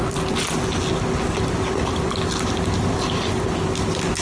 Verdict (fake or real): real